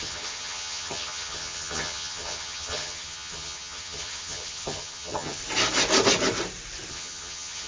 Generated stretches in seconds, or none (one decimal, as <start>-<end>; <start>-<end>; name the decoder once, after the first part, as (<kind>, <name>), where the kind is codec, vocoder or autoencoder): 0.0-5.4 (vocoder, HiFi-GAN); 6.9-7.7